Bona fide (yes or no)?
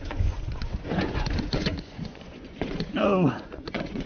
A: no